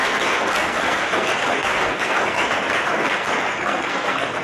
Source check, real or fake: fake